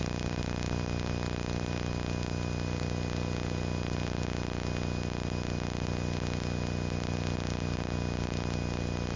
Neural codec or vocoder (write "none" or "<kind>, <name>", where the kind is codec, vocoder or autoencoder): none